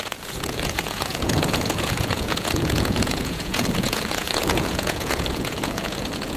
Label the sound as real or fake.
fake